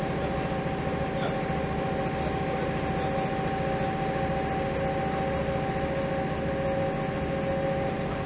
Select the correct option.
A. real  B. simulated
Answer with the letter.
A